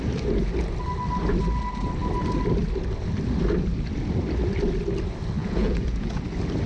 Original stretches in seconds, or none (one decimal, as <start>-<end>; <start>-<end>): 0.0-5.4; 6.2-6.7